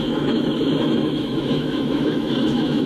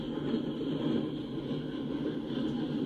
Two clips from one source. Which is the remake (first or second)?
first